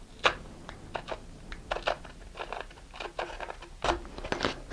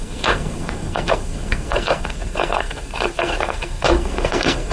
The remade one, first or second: second